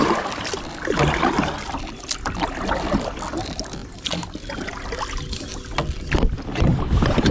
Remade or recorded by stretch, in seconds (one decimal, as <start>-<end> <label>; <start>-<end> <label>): 0.0-7.3 recorded